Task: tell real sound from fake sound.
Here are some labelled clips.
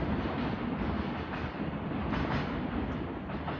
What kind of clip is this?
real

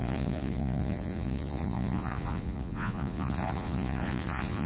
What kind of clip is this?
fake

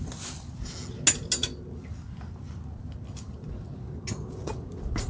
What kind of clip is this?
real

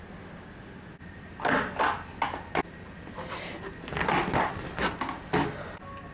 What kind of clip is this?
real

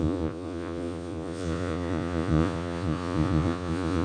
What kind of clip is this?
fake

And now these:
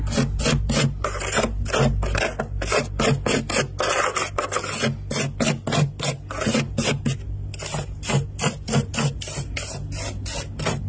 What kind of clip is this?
real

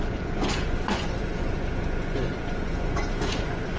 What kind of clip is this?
fake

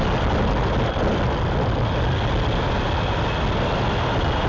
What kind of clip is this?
real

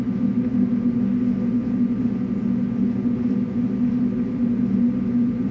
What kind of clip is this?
real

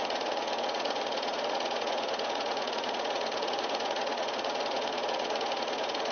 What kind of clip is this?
fake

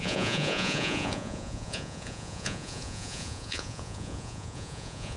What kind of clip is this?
fake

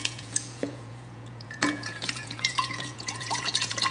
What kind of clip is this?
fake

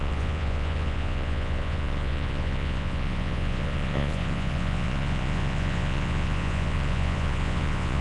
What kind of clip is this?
fake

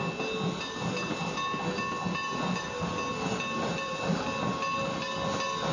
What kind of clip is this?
real